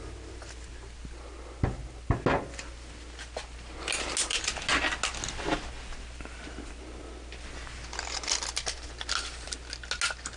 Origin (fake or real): real